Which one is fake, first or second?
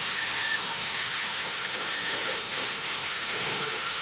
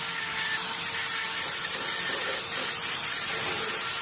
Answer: first